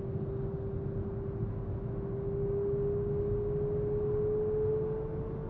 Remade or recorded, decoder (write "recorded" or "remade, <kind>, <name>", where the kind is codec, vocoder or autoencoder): recorded